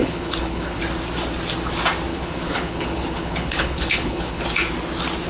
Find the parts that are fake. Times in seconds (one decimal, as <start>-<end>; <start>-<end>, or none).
0.0-0.8; 2.1-4.4